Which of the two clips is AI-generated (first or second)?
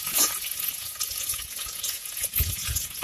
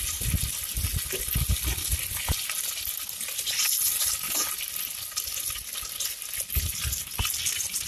first